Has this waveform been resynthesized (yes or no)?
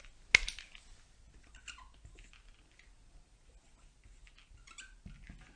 no